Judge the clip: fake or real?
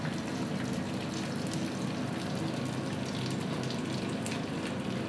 real